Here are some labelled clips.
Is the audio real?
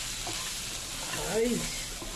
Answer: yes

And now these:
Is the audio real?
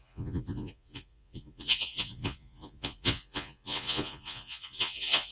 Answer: no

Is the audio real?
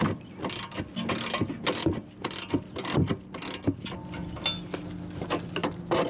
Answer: yes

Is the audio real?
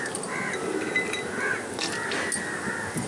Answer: yes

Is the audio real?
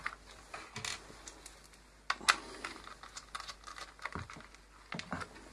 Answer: yes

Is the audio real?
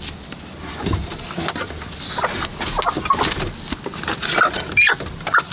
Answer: yes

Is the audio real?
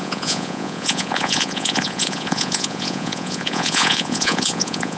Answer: no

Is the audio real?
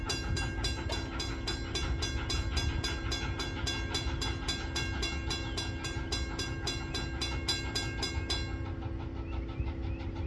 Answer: yes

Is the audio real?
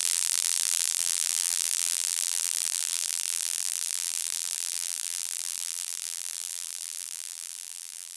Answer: no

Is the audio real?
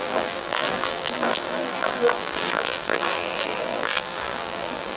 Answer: no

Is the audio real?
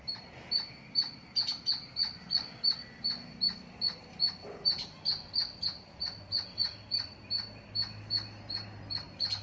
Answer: yes